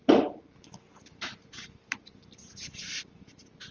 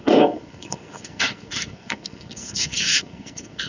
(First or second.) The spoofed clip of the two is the second